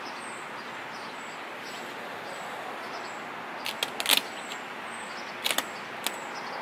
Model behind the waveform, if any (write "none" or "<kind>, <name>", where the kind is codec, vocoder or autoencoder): none